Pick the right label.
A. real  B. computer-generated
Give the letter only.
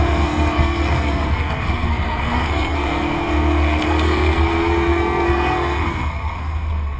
B